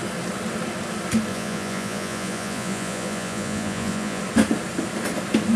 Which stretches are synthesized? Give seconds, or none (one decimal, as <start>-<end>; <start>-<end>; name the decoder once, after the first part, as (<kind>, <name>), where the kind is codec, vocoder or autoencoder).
1.3-4.2 (vocoder, Vocos)